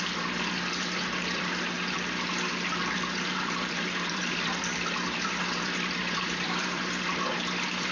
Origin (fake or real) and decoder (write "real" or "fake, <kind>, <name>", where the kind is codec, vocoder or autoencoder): fake, vocoder, BigVGAN v2